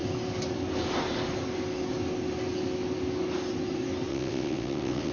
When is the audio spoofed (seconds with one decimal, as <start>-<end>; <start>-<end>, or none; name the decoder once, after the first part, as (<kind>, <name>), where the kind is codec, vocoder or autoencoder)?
4.1-5.1 (vocoder, WaveNeXt)